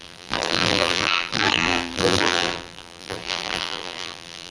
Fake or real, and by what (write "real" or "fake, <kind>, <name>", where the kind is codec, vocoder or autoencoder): fake, vocoder, BigVGAN v2